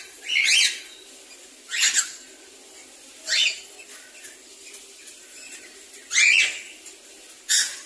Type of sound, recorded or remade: recorded